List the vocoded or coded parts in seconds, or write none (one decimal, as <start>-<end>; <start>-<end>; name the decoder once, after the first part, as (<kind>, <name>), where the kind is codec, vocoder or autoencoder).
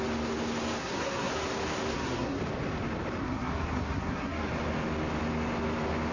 0.8-1.3 (codec, SNAC); 1.9-2.4; 3.2-4.5